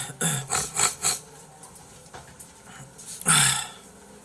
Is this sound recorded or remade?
recorded